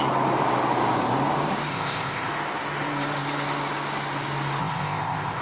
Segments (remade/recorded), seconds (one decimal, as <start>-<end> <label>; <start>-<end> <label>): 0.0-1.7 recorded; 1.7-2.3 remade; 2.3-4.6 recorded; 4.6-5.4 remade